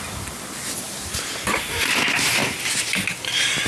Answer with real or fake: real